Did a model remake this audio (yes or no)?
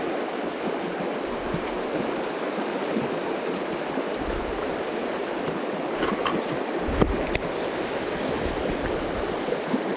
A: no